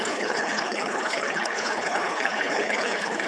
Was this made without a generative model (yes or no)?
no